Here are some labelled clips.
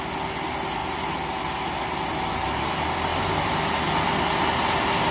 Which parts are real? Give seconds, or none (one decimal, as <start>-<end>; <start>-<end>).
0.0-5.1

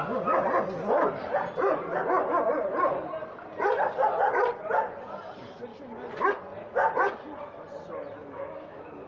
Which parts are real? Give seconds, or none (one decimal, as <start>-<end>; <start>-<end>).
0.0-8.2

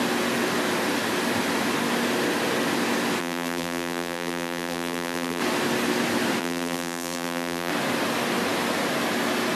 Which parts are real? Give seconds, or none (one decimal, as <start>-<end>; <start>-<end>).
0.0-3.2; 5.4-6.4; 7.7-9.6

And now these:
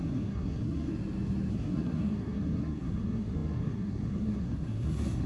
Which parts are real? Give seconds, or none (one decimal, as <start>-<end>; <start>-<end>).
0.9-1.5